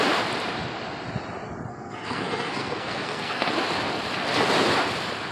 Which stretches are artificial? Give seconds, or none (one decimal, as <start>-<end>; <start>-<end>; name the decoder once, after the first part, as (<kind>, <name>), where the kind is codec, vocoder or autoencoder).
1.7-3.5 (codec, SNAC)